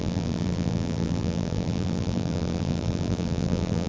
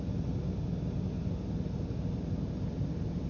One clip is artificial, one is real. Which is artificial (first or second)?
first